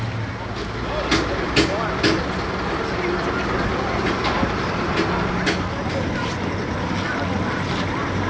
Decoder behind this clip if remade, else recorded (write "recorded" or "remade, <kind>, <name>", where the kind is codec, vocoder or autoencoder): recorded